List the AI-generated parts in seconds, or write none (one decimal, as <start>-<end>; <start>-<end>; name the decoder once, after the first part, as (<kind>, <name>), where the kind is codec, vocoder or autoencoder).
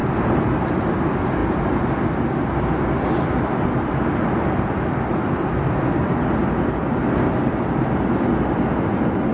none